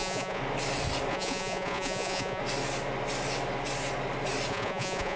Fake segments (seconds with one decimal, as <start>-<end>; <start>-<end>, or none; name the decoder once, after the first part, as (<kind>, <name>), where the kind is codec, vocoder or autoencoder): 0.0-0.4 (vocoder, Vocos); 1.1-2.4; 4.5-5.2